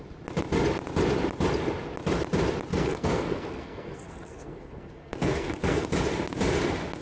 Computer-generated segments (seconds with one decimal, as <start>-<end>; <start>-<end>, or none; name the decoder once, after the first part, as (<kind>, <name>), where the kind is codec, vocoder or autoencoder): 2.7-5.9 (codec, SNAC)